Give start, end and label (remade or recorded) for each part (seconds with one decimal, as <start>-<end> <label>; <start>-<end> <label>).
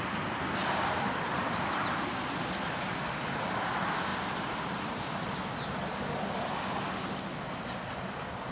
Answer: 0.0-4.1 recorded; 4.1-5.4 remade; 5.4-8.5 recorded